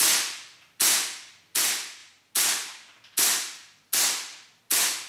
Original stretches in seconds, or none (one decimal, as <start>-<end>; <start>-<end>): 0.0-5.1